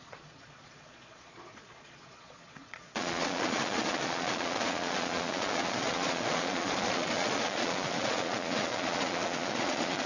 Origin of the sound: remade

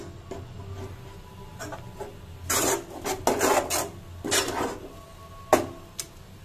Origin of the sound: recorded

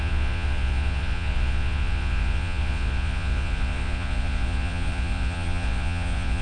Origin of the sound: remade